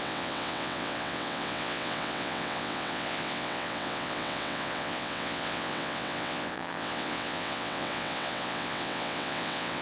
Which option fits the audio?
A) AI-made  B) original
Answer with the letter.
A